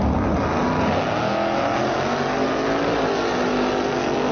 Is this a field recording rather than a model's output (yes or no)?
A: yes